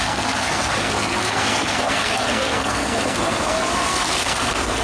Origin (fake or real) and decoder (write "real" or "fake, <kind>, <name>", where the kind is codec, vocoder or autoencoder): fake, codec, SNAC